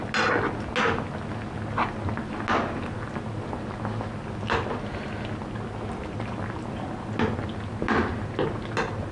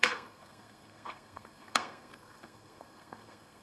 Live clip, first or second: first